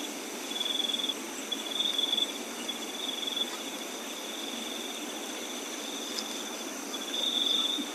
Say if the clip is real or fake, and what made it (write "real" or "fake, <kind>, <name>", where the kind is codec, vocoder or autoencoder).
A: real